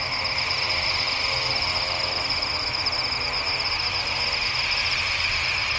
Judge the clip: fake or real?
real